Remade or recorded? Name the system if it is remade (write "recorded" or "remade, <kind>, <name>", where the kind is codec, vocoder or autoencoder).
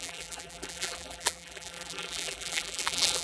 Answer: remade, vocoder, BigVGAN v2